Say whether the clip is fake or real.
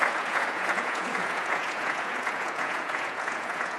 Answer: fake